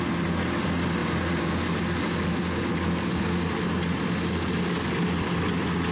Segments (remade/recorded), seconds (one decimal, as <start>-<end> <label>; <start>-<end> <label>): 0.0-5.9 recorded